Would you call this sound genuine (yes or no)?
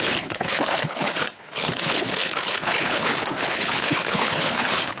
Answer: no